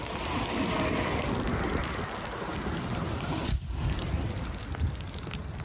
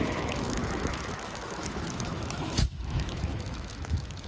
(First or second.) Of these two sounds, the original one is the first